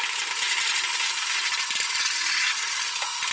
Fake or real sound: fake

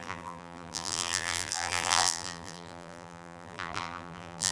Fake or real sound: fake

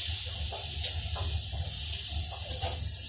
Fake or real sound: real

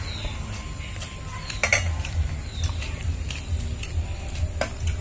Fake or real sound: real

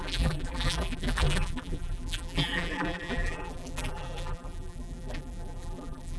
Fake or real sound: fake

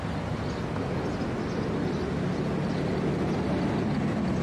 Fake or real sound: real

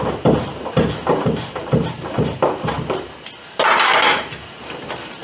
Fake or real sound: fake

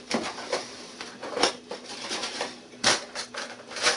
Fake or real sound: fake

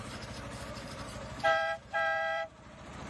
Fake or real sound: fake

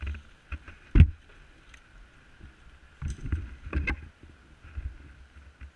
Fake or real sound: real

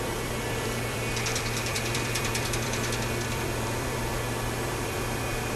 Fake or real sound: fake